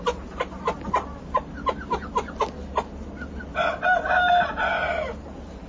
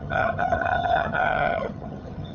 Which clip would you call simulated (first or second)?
second